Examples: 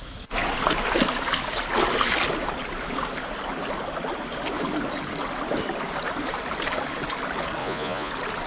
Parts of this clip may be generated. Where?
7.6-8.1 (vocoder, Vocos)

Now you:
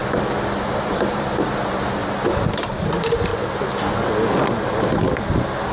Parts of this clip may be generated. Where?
0.9-2.0 (vocoder, BigVGAN v2); 2.7-3.3; 4.7-5.7